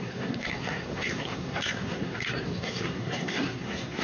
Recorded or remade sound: remade